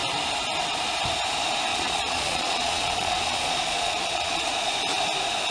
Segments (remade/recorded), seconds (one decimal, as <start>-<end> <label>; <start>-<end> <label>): 0.0-1.7 recorded; 1.7-4.6 remade; 4.6-5.5 recorded

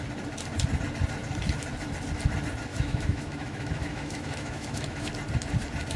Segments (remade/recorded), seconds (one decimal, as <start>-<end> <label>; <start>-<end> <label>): 0.0-2.7 recorded; 2.7-5.1 remade; 5.1-6.0 recorded

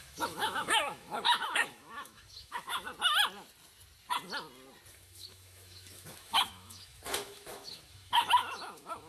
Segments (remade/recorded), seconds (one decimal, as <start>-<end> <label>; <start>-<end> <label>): 0.0-2.9 remade; 2.9-4.9 recorded; 4.9-9.1 remade

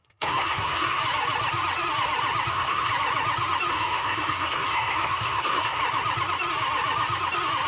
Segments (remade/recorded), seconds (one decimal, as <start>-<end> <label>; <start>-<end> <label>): 0.0-1.0 remade; 1.0-2.5 recorded; 2.5-2.9 remade; 2.9-3.7 recorded; 3.7-5.8 remade; 5.8-7.7 recorded